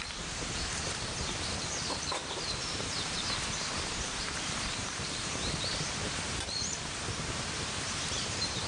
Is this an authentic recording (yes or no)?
no